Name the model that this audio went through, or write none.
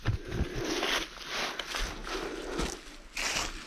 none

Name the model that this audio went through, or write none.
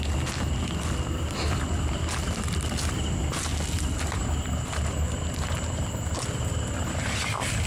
none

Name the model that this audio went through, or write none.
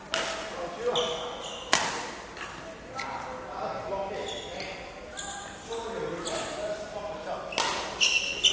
none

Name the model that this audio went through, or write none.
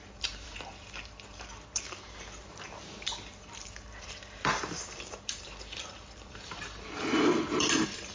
vocoder, BigVGAN v2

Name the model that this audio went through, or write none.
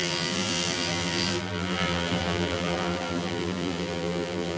vocoder, BigVGAN v2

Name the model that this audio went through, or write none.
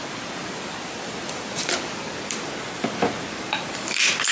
vocoder, BigVGAN v2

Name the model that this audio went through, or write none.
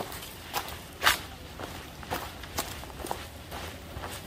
vocoder, BigVGAN v2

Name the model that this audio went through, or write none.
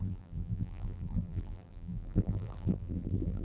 vocoder, BigVGAN v2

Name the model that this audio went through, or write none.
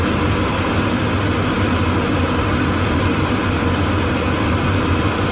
none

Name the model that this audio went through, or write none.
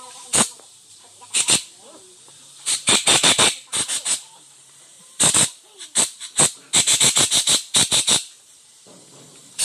vocoder, BigVGAN v2